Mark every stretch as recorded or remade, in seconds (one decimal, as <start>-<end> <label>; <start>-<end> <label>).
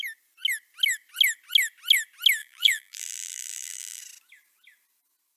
0.0-2.4 recorded; 2.4-4.0 remade; 4.0-5.4 recorded